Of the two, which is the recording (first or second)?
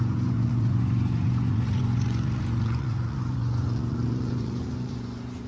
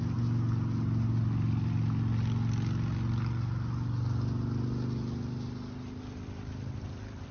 second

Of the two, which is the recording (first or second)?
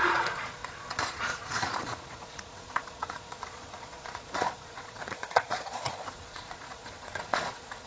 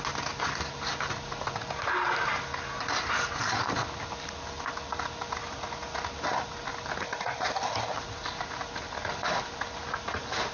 second